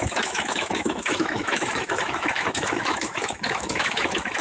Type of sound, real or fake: fake